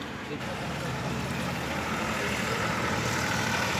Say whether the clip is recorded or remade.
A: remade